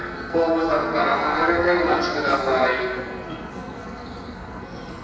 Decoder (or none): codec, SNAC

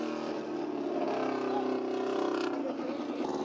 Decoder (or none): none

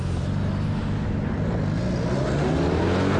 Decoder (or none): none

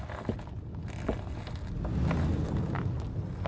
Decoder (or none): none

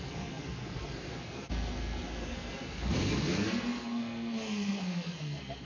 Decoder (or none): codec, SNAC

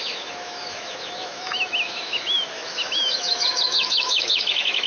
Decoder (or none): autoencoder, DAC-VAE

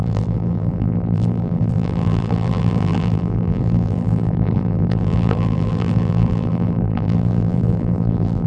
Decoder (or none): vocoder, BigVGAN v2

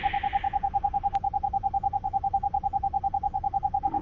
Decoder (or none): vocoder, Vocos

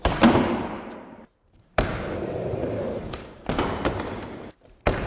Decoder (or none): vocoder, BigVGAN v2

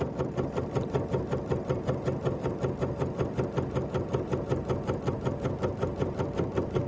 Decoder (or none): none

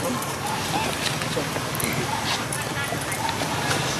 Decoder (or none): none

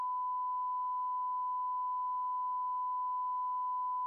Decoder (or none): none